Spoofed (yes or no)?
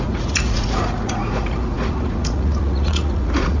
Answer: yes